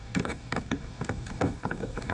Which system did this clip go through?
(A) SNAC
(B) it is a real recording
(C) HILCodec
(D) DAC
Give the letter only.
D